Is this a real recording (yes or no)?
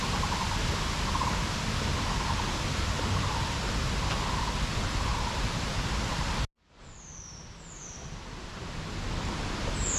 yes